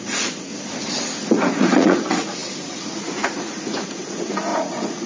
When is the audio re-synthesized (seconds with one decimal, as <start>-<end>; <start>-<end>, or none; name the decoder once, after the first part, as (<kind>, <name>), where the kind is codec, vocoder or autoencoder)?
0.0-0.5 (vocoder, Vocos); 1.3-5.1